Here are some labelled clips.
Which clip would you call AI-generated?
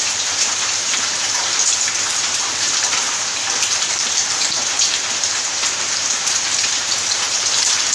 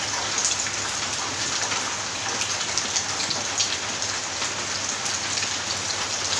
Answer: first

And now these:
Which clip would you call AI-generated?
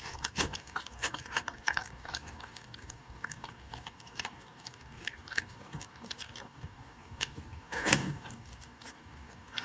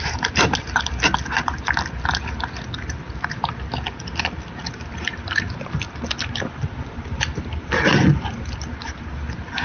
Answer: first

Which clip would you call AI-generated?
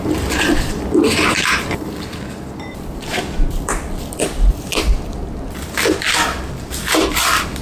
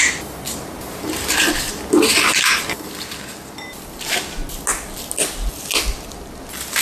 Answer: first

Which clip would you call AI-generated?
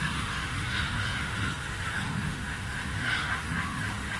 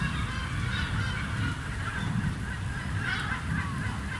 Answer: first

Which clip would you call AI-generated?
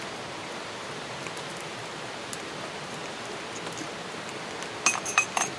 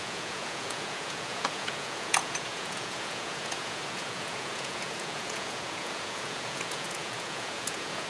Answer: second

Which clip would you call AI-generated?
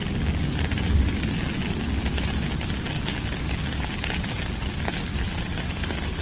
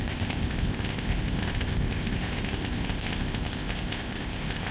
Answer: second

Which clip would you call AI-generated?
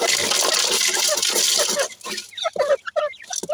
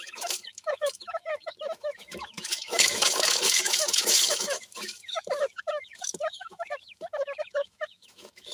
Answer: second